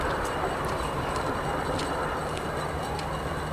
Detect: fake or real fake